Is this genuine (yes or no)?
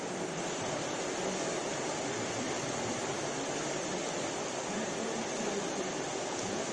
yes